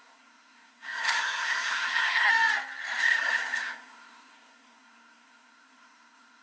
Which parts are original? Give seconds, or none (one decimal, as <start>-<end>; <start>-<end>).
2.3-3.0